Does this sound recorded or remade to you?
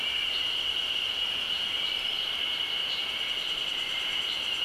remade